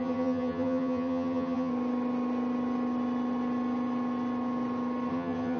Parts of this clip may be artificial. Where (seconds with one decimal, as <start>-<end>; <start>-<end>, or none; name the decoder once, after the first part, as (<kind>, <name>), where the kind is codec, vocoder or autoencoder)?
0.0-1.7 (vocoder, HiFi-GAN); 5.1-5.6